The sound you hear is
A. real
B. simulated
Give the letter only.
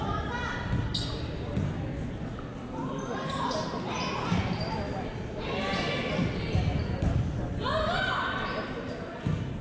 A